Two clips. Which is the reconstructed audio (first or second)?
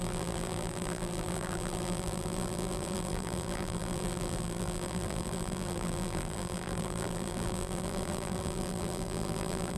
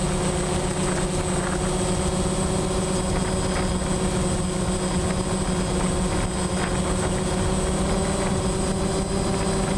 first